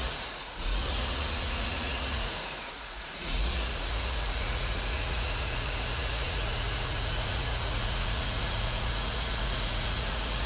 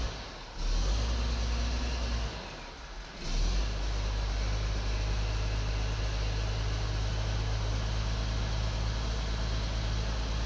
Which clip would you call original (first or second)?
second